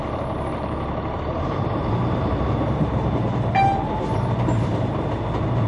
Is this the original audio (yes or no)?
no